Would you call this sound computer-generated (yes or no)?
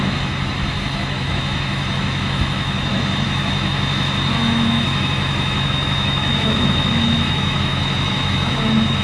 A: yes